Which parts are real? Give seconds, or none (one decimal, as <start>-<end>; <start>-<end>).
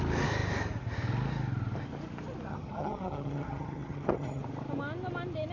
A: 0.0-2.5; 4.4-5.5